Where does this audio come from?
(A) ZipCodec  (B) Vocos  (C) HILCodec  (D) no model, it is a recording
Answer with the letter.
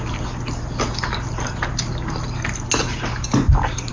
D